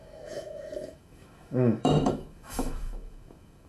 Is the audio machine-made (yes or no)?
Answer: yes